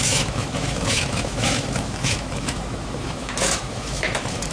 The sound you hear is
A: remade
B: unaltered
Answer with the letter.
A